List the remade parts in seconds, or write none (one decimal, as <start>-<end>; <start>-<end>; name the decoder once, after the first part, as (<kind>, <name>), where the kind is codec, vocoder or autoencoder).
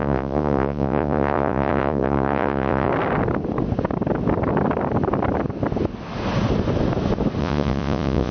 0.0-2.9 (vocoder, Vocos); 7.4-8.3